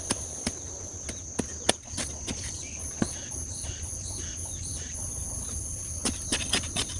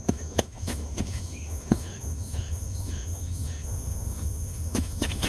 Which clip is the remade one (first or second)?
second